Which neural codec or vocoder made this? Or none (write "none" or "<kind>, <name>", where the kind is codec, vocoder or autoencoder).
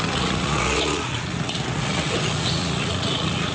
vocoder, Vocos